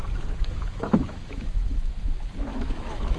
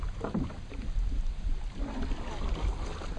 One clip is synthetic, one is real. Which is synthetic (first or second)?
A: first